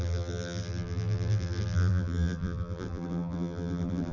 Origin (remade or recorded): remade